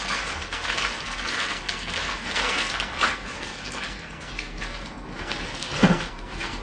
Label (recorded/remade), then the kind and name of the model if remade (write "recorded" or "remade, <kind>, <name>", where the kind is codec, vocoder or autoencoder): remade, codec, SNAC